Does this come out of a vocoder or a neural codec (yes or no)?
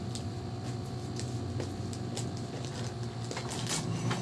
no